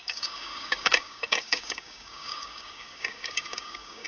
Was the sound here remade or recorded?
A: remade